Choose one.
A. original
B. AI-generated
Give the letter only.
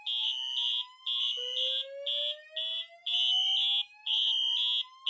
A